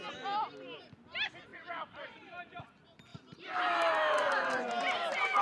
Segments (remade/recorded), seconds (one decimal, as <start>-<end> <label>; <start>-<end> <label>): 0.0-1.5 recorded; 1.5-2.6 remade; 2.6-3.1 recorded; 3.1-5.4 remade